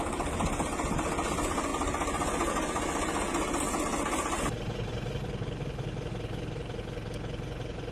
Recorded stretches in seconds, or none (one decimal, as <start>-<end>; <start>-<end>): 0.0-7.9